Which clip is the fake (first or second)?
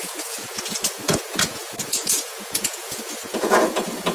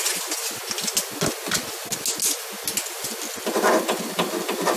first